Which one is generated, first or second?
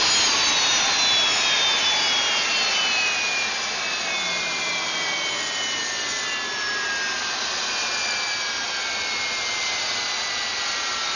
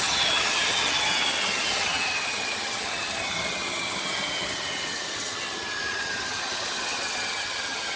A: second